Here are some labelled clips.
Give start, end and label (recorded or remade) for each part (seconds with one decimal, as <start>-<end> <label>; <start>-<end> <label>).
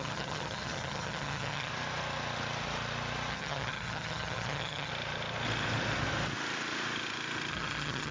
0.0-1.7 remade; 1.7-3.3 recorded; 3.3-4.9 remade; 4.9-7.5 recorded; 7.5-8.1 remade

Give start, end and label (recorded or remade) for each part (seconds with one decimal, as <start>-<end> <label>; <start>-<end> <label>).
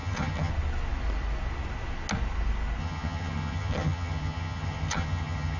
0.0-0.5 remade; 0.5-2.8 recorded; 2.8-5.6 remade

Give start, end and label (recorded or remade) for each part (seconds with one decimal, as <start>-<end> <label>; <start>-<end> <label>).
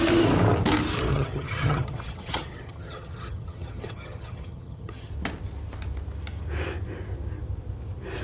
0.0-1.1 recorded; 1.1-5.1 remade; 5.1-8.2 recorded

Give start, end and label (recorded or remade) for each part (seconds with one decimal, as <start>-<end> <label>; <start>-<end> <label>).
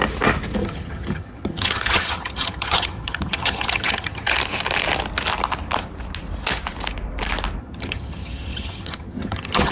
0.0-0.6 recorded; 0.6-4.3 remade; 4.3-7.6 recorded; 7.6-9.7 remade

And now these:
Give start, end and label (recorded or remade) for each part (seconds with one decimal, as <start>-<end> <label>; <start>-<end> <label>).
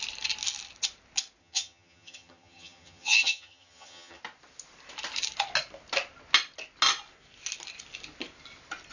0.0-1.4 recorded; 1.4-4.2 remade; 4.2-8.9 recorded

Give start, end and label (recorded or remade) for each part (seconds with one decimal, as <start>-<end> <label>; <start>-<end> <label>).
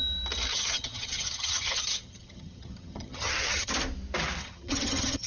0.0-0.5 recorded; 0.5-3.7 remade; 3.7-4.4 recorded; 4.4-5.3 remade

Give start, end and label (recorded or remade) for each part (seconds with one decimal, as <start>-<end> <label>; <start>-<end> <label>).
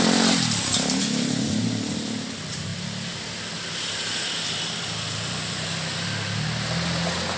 0.0-7.4 recorded